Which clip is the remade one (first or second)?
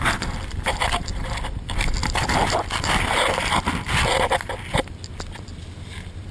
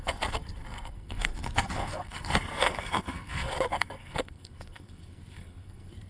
second